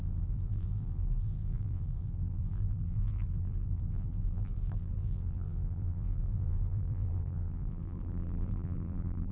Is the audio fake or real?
fake